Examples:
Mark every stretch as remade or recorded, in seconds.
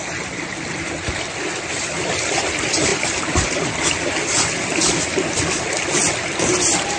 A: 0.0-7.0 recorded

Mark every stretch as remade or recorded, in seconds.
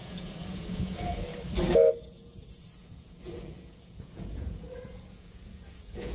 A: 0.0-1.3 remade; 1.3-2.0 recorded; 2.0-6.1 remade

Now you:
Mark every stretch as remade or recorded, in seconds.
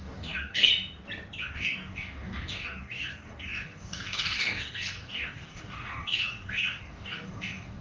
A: 0.0-0.7 remade; 0.7-1.4 recorded; 1.4-7.8 remade